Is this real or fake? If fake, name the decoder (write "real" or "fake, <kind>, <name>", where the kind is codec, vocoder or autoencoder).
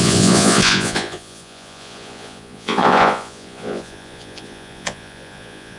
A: fake, vocoder, Vocos